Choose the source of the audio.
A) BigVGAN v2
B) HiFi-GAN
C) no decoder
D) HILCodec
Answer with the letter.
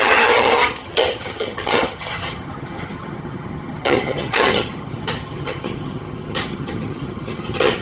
B